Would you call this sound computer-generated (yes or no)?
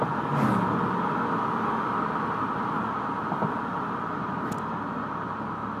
no